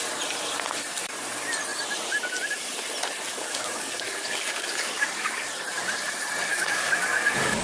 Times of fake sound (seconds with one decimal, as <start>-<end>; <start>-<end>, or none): 3.3-5.5; 6.5-7.6